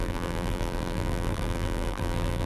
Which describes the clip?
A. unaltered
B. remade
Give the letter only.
B